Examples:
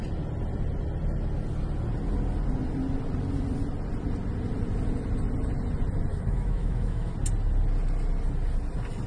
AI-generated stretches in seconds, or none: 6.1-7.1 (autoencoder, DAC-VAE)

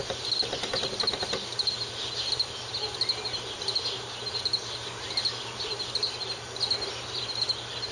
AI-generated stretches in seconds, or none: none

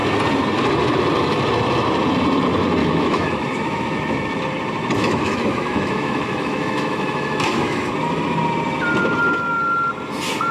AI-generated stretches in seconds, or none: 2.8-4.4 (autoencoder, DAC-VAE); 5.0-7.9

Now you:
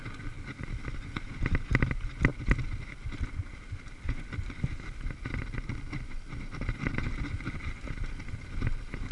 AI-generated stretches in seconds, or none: none